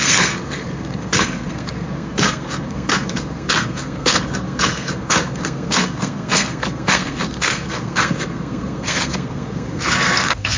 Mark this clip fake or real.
fake